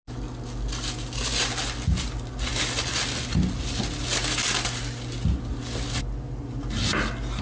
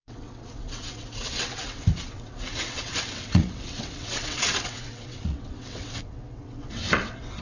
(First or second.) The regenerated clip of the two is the second